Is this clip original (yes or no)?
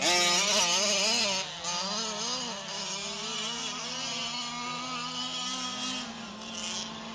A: yes